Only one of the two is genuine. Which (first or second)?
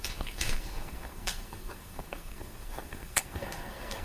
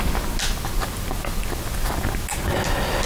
second